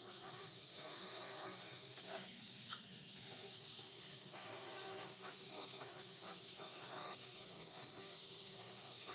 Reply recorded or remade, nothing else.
remade